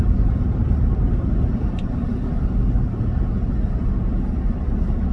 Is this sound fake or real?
real